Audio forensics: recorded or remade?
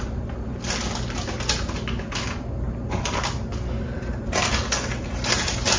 recorded